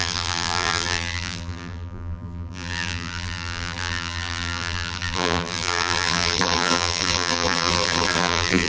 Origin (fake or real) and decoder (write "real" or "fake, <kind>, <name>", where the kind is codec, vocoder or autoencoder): fake, vocoder, BigVGAN v2